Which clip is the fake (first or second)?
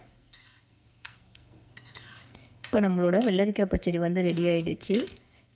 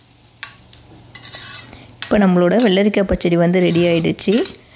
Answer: first